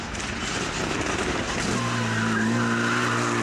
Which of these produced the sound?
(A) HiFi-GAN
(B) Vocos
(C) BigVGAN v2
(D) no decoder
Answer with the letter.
D